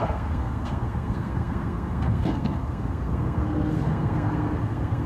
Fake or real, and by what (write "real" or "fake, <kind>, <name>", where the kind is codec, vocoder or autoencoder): fake, codec, SNAC